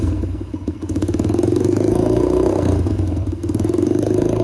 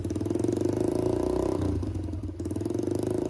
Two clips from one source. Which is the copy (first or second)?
first